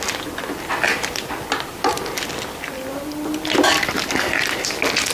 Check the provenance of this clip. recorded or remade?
recorded